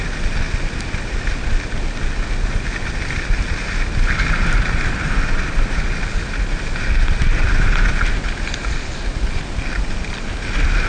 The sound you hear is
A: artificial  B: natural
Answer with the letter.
B